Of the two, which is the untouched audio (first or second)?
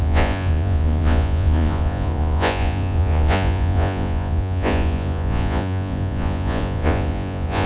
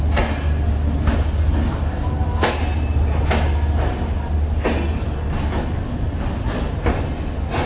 second